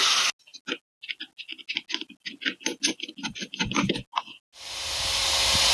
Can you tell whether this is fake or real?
real